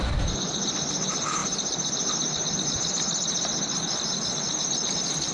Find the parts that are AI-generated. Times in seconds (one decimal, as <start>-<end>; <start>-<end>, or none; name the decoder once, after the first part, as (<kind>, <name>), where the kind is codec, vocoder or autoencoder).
none